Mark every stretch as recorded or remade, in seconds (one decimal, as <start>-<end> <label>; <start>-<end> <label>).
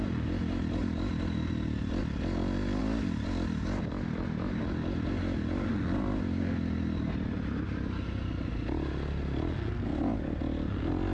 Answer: 0.0-0.8 recorded; 0.8-2.0 remade; 2.0-2.8 recorded; 2.8-3.8 remade; 3.8-11.1 recorded